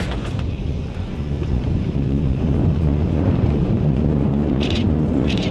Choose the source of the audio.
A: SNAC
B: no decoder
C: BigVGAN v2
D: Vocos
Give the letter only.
D